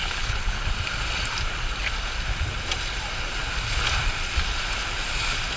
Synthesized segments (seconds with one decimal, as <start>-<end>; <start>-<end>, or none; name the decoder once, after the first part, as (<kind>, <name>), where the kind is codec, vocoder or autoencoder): 0.0-0.6 (codec, HILCodec)